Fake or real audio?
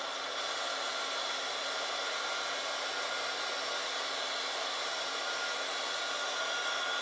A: real